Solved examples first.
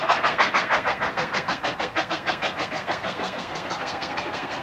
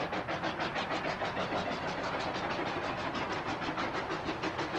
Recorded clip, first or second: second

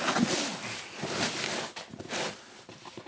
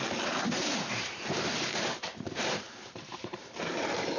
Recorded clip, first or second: first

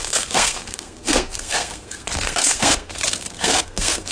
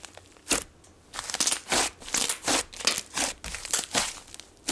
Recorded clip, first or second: second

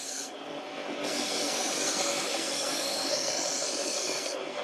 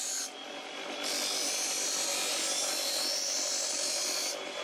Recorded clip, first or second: second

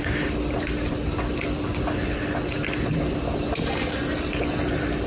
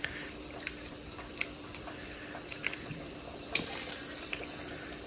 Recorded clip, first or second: first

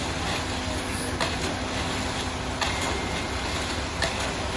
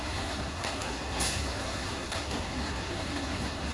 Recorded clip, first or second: first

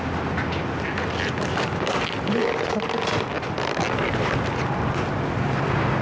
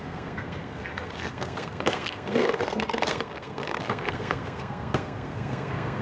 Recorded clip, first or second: first